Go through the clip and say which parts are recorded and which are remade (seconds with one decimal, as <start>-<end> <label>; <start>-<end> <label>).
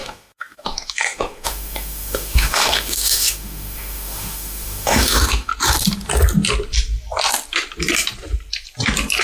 0.0-5.5 remade; 5.5-9.2 recorded